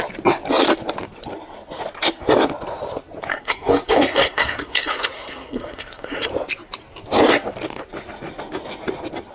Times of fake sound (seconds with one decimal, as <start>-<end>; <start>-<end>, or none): 3.3-6.3